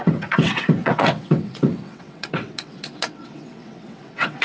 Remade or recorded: remade